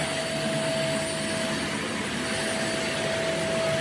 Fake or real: real